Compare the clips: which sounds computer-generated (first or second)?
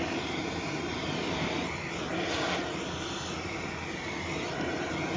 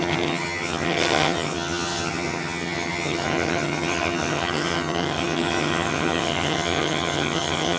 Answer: second